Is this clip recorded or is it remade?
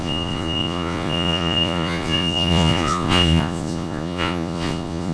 remade